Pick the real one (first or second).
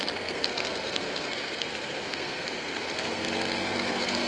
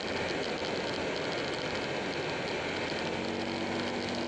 second